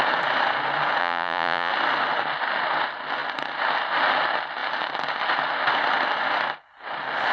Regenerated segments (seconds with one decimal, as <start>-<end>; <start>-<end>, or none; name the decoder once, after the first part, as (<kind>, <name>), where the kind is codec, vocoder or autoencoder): 1.0-1.7 (vocoder, Vocos)